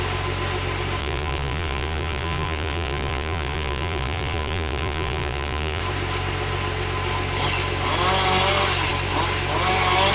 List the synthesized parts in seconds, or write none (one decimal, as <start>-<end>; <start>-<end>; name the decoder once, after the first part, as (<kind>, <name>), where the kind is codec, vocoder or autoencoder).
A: 1.0-5.8 (vocoder, Vocos)